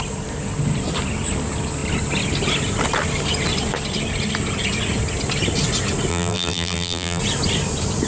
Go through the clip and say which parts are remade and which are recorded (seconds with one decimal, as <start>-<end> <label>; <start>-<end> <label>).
0.0-6.1 recorded; 6.1-7.2 remade; 7.2-8.1 recorded